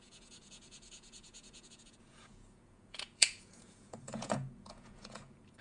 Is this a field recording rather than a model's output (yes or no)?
no